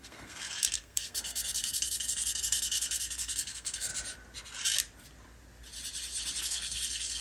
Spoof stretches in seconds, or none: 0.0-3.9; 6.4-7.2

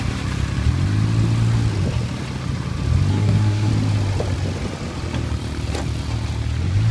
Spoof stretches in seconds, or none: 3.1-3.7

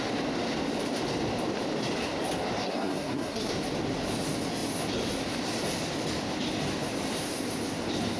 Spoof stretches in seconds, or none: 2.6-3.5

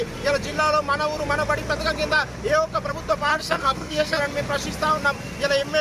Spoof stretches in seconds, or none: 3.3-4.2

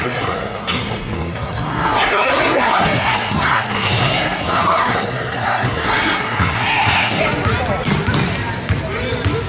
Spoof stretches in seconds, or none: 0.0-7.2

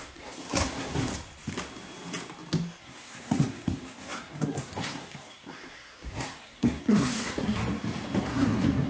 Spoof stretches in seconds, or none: 0.0-1.1; 2.8-7.6; 8.2-8.9

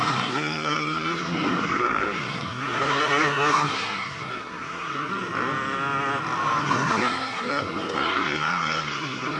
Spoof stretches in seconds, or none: 0.0-5.1; 6.6-9.4

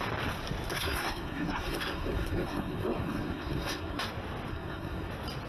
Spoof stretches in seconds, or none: 0.7-4.0; 4.5-5.1